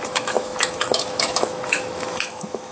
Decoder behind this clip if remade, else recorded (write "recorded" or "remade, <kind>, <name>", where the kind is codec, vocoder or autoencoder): remade, autoencoder, DAC-VAE